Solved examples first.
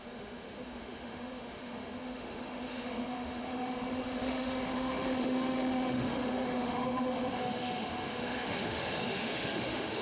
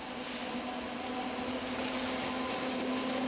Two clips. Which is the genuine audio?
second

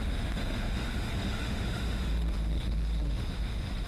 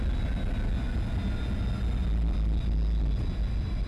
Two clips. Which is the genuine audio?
second